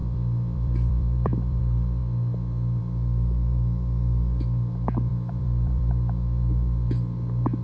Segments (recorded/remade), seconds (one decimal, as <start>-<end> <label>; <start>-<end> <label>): 0.0-1.6 remade; 1.6-5.1 recorded; 5.1-5.9 remade; 5.9-7.6 recorded